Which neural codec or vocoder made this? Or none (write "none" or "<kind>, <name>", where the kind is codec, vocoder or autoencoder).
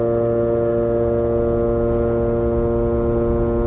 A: none